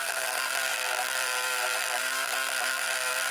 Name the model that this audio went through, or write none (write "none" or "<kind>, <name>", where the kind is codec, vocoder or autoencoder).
vocoder, BigVGAN v2